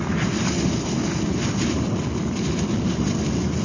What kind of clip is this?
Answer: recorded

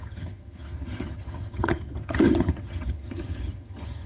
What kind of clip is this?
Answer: remade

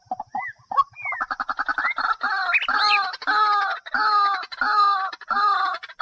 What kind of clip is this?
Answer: recorded